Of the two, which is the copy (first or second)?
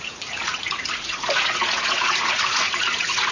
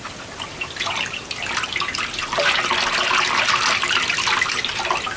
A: first